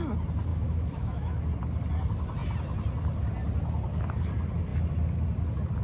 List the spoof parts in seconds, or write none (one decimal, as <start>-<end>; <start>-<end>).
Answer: 0.5-1.4